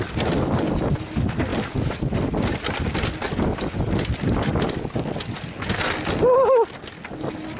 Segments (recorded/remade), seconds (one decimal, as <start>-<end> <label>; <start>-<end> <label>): 0.0-7.6 recorded